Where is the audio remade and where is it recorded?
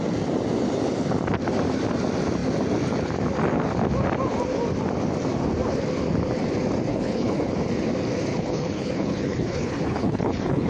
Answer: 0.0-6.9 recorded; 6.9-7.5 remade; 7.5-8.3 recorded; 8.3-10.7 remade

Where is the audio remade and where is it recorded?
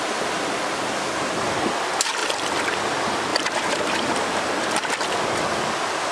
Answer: 0.0-2.2 recorded; 2.2-2.9 remade; 2.9-3.3 recorded; 3.3-4.4 remade; 4.4-6.1 recorded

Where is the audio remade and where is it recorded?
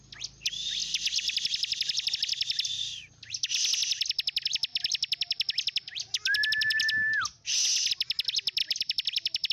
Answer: 0.0-8.6 recorded; 8.6-9.5 remade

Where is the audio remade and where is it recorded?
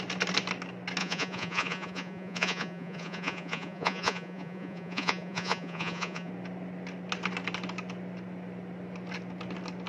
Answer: 0.0-1.0 recorded; 1.0-6.3 remade; 6.3-9.9 recorded